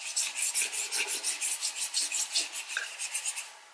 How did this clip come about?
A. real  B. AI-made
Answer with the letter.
A